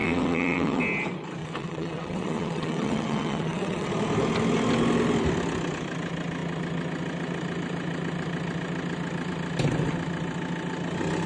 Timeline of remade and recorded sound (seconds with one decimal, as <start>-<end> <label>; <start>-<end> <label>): 0.0-0.8 remade; 0.8-1.4 recorded; 1.4-3.9 remade; 3.9-11.3 recorded